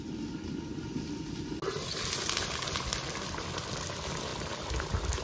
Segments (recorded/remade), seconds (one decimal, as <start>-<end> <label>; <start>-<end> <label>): 0.0-5.2 recorded